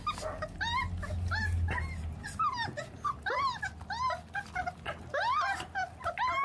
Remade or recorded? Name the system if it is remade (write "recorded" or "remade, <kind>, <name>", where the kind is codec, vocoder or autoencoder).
recorded